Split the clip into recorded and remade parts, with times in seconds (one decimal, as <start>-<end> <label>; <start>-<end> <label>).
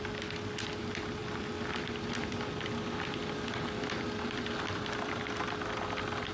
0.0-6.3 recorded